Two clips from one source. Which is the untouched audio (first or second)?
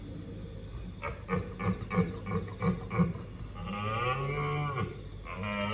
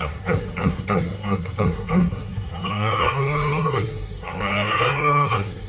first